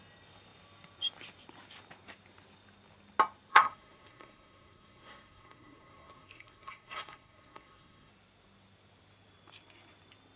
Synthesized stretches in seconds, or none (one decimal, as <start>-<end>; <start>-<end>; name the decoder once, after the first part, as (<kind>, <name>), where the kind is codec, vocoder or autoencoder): 3.5-8.1 (codec, SNAC)